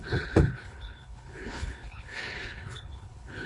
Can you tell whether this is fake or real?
fake